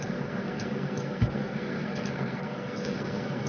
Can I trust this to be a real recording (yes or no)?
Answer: no